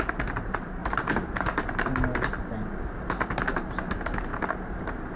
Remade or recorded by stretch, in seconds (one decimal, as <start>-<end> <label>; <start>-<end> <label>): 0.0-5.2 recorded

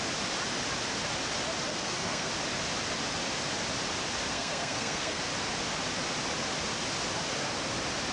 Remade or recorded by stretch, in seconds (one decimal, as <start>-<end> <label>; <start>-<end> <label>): 0.0-1.7 recorded; 1.7-2.3 remade; 2.3-4.3 recorded; 4.3-5.2 remade; 5.2-8.1 recorded

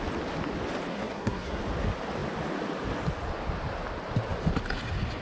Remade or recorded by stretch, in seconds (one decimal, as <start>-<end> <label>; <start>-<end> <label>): 0.0-0.9 recorded; 0.9-1.6 remade; 1.6-5.2 recorded

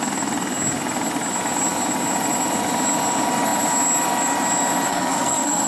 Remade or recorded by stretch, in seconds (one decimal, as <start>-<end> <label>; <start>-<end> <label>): 0.0-4.9 recorded; 4.9-5.7 remade